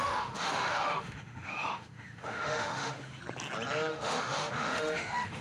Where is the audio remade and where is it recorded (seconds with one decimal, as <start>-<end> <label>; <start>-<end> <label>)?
0.0-3.2 remade; 3.2-3.9 recorded; 3.9-5.4 remade